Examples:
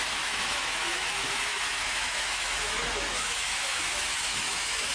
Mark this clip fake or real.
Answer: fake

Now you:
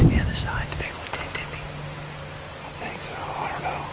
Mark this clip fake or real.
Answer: real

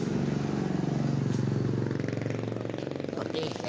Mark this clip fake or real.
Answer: real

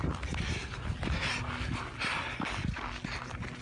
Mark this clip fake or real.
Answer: real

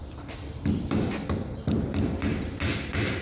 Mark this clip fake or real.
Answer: fake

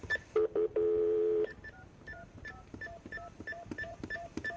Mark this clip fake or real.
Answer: fake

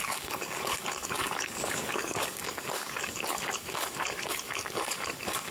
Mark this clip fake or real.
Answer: fake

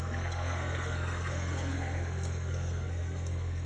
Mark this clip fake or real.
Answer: fake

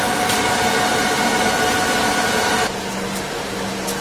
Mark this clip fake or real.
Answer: real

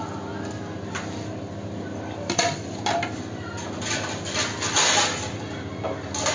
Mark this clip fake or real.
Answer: real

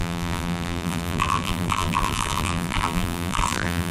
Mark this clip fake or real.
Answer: fake